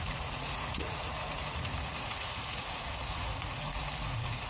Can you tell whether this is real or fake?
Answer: fake